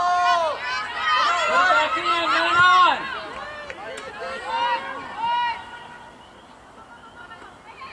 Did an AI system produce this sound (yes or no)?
no